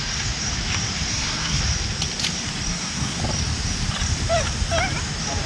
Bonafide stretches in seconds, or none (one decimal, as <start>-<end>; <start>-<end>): 0.0-1.1; 1.6-2.7; 3.2-5.5